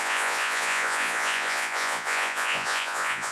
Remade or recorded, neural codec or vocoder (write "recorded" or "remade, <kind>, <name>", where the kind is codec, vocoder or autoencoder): remade, vocoder, Vocos